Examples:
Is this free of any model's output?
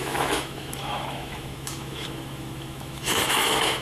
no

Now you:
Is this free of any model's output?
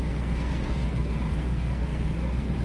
no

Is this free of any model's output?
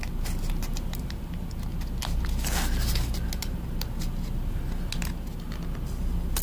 yes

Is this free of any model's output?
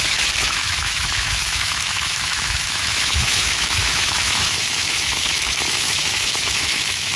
no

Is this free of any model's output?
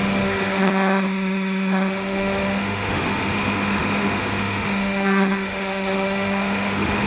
no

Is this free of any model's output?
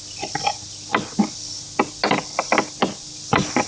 yes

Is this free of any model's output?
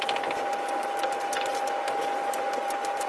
yes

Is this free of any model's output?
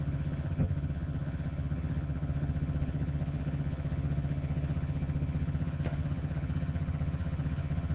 no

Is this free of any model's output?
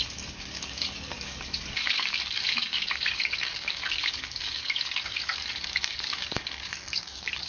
no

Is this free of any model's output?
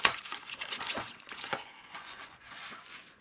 no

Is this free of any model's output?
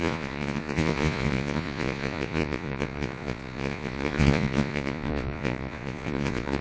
no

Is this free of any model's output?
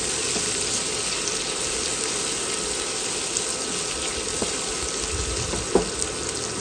yes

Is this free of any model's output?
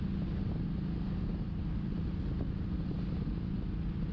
yes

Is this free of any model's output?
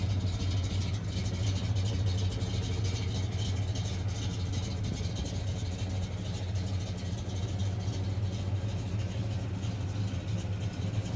yes